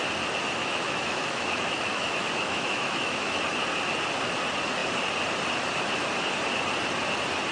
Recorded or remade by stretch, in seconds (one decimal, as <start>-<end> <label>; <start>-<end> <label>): 0.0-0.6 recorded; 0.6-3.4 remade; 3.4-7.5 recorded